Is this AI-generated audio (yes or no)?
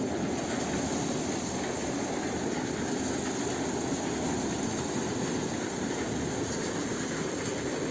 no